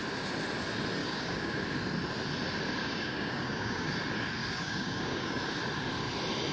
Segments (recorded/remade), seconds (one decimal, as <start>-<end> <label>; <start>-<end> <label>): 0.0-1.0 recorded; 1.0-1.6 remade; 1.6-2.8 recorded; 2.8-3.9 remade; 3.9-4.4 recorded; 4.4-5.4 remade; 5.4-6.5 recorded